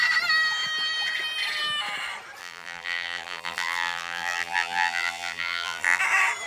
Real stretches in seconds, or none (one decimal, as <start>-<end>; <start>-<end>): 0.0-2.4; 6.0-6.5